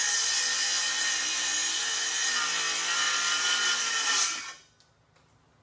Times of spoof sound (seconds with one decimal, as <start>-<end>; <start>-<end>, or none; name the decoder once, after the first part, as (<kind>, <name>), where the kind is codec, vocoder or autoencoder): none